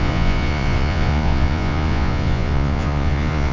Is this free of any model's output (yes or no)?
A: no